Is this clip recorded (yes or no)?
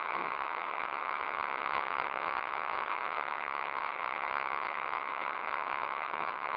no